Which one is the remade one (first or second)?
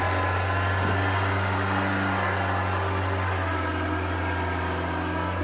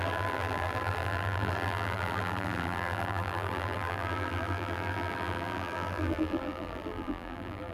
second